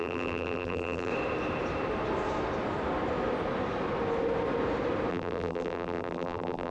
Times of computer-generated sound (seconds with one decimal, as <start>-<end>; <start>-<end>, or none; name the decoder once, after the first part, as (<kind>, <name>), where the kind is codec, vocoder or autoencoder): 0.0-1.1 (vocoder, BigVGAN v2); 5.1-6.7

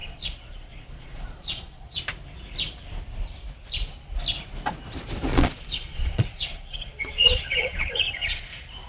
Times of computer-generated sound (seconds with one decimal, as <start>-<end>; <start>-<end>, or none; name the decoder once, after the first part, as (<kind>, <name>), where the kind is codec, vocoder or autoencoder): 0.0-2.0 (vocoder, Vocos); 5.3-8.4

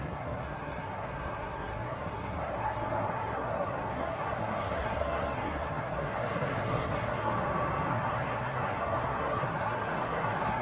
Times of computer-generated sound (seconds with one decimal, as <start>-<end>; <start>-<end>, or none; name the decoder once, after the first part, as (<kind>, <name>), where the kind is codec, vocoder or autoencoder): 0.0-7.3 (codec, SNAC); 7.9-10.6

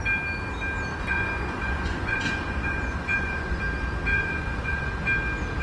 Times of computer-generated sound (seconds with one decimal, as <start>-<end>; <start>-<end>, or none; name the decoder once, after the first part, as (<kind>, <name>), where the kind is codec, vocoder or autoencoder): 0.9-3.6 (vocoder, Vocos); 4.1-4.9

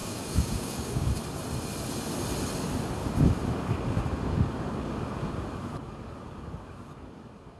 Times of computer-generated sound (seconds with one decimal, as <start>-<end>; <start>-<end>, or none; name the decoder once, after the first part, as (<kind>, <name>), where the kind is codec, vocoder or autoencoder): 0.0-1.2 (codec, DAC); 3.0-7.6

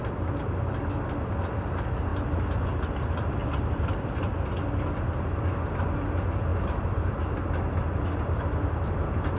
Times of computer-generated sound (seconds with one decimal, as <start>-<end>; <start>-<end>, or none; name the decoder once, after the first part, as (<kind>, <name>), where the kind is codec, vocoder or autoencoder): 3.4-4.5 (vocoder, BigVGAN v2)